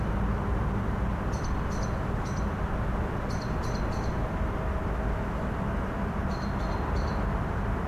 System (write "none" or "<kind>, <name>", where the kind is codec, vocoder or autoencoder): none